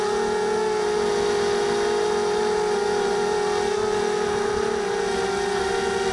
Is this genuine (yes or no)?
yes